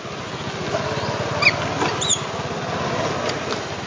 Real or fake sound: real